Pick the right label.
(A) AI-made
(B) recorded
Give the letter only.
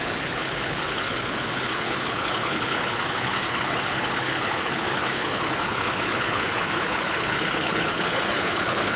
A